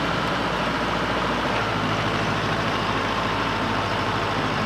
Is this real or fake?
fake